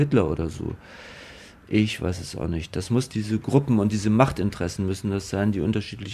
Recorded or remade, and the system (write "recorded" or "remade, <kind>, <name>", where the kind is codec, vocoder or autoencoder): remade, vocoder, BigVGAN v2